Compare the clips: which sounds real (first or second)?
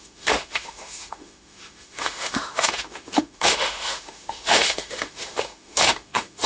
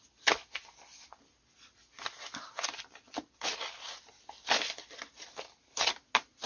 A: second